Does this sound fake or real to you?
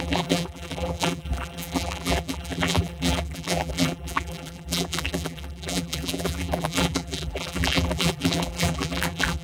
fake